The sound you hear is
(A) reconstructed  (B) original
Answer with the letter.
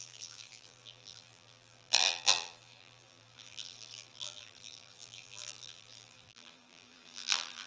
A